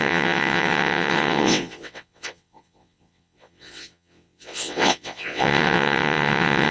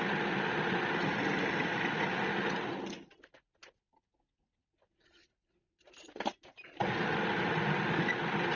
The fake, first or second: first